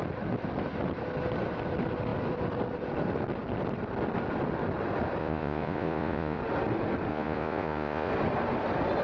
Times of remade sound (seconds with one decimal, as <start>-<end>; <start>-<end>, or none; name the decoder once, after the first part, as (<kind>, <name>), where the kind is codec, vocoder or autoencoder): 5.2-6.4 (vocoder, Vocos); 7.1-8.1